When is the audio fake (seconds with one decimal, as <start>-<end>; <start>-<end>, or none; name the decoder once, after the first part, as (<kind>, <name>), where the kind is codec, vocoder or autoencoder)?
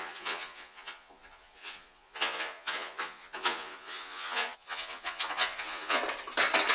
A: 0.0-6.0 (vocoder, Vocos)